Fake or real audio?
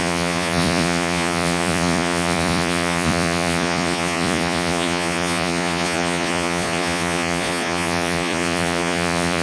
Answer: fake